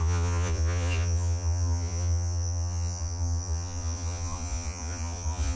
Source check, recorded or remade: remade